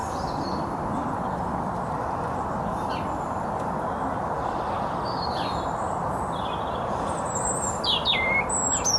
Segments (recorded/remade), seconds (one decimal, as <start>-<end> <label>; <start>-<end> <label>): 0.0-9.0 recorded